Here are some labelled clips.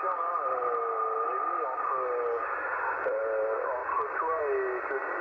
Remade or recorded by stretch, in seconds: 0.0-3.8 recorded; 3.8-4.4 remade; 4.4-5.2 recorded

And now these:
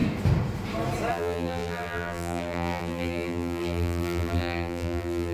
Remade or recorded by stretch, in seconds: 0.0-1.1 recorded; 1.1-5.3 remade

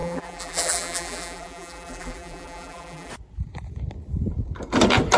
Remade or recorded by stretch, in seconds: 0.0-3.1 remade; 3.1-5.2 recorded